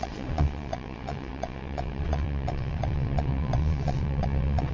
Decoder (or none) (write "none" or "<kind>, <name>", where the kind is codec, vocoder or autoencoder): vocoder, WaveNeXt